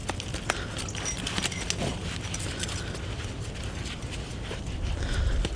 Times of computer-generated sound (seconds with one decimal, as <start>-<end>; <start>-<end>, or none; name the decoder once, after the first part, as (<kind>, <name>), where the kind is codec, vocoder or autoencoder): none

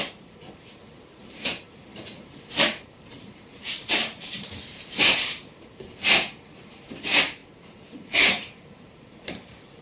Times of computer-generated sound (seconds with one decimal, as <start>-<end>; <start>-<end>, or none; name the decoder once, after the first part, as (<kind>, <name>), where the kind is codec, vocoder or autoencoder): 0.0-9.8 (vocoder, BigVGAN v2)

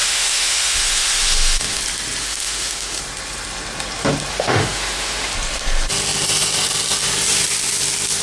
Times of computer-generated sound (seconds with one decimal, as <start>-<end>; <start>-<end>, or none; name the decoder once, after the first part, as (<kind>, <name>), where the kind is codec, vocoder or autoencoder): 0.0-1.8 (autoencoder, DAC-VAE); 2.2-3.0; 4.3-5.3

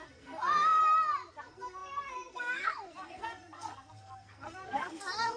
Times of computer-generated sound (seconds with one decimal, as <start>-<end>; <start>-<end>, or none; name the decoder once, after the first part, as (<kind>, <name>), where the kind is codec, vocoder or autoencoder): 0.0-0.8 (codec, SNAC); 1.3-5.4

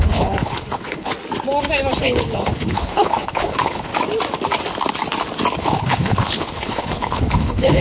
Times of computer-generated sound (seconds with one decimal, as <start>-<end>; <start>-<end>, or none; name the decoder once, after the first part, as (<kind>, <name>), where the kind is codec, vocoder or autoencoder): 0.0-1.1 (codec, HILCodec); 2.0-3.9; 5.6-7.8

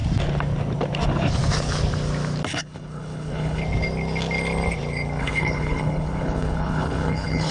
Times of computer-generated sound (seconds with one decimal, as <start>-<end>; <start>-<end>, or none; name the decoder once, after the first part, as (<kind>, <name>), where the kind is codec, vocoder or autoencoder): 2.5-3.6 (codec, HILCodec); 5.2-7.5

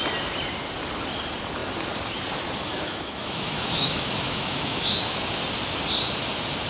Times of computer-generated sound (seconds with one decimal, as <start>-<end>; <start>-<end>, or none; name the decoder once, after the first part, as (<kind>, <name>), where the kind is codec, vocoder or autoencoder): 2.7-5.3 (autoencoder, DAC-VAE)

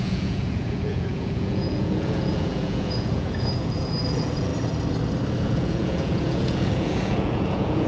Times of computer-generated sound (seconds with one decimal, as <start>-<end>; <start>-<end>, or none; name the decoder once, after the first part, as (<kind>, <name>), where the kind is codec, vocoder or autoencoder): 0.0-4.5 (vocoder, Vocos); 5.4-7.9